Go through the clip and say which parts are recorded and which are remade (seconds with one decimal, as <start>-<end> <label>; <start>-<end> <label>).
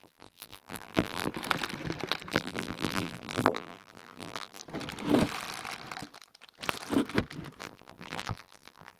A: 0.0-1.3 remade; 1.3-2.3 recorded; 2.3-4.6 remade; 4.6-7.6 recorded; 7.6-9.0 remade